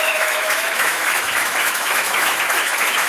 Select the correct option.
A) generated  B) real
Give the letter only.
A